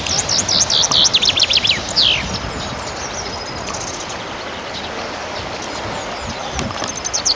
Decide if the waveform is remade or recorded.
recorded